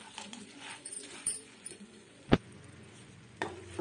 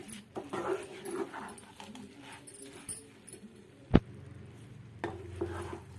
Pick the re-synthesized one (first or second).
first